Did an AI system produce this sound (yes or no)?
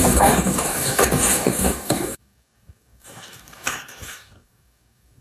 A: yes